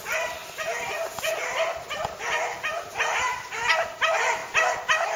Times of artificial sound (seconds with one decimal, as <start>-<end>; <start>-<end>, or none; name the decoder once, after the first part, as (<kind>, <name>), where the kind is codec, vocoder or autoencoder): 0.4-3.5 (vocoder, BigVGAN v2)